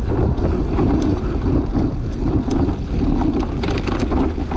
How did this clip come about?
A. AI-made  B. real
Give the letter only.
B